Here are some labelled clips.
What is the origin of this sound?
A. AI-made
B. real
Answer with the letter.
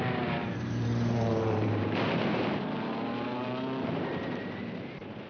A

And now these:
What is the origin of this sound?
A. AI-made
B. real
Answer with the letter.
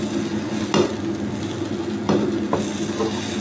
B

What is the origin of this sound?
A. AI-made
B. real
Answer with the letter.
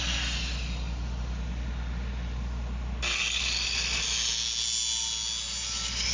B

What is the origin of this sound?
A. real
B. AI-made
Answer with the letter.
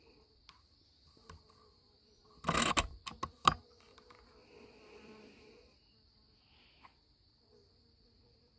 A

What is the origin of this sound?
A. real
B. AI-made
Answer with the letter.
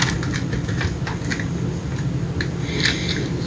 A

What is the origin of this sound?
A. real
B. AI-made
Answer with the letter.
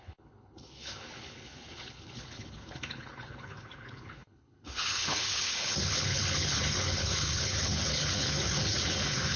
B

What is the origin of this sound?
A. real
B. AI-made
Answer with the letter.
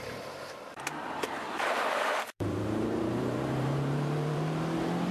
B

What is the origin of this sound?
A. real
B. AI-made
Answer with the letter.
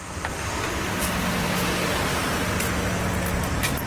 A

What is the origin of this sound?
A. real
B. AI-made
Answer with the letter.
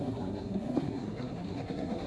B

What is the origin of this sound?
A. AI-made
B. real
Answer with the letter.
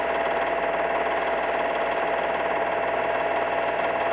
B